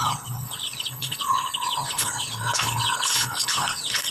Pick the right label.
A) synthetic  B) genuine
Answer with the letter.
A